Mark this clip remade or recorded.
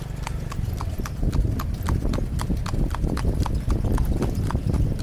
recorded